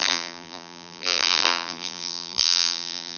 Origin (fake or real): fake